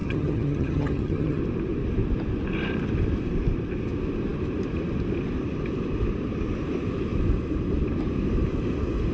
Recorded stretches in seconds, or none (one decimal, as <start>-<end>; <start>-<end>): 1.4-9.1